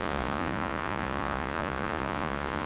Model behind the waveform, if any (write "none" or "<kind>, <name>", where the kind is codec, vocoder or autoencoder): vocoder, Vocos